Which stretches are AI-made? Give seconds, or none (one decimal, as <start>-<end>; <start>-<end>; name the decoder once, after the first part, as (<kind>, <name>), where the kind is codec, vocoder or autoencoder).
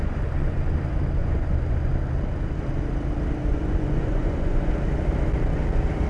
0.0-0.6 (vocoder, Vocos); 1.2-1.9; 3.5-4.7